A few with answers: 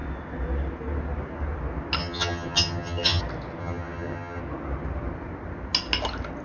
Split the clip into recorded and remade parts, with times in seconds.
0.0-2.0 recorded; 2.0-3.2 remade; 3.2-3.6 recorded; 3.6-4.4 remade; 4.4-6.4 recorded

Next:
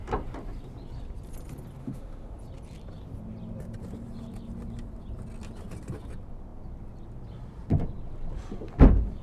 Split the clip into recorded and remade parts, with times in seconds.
0.0-1.8 recorded; 1.8-2.4 remade; 2.4-9.2 recorded

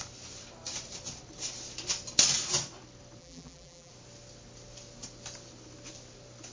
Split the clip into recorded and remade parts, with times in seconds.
0.0-3.2 recorded; 3.2-3.9 remade; 3.9-6.5 recorded